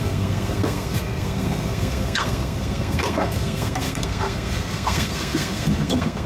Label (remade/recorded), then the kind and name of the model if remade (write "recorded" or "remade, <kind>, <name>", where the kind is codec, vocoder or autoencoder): remade, codec, SNAC